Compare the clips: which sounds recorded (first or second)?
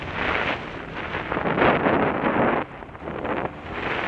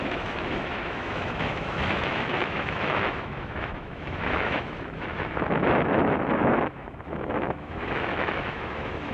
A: first